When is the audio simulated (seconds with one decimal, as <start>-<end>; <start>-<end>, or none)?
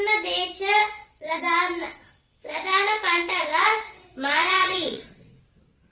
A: 0.8-1.4; 1.8-5.3